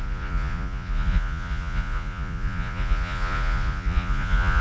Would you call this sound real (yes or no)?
no